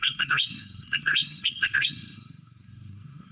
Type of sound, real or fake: fake